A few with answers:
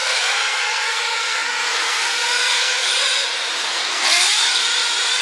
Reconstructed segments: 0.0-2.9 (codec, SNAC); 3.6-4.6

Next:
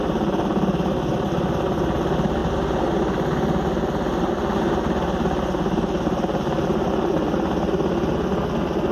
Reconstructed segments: none